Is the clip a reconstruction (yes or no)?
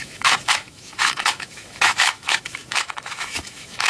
yes